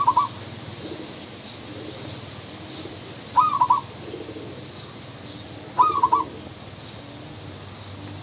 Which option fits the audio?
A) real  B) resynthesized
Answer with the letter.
A